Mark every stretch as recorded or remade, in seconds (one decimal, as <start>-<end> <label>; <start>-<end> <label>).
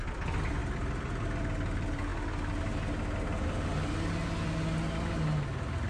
0.0-2.1 remade; 2.1-5.9 recorded